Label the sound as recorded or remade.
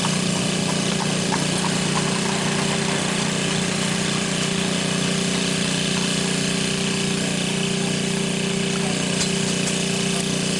recorded